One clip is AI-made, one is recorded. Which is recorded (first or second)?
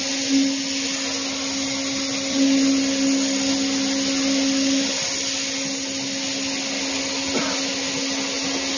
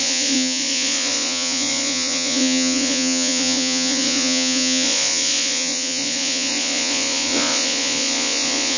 first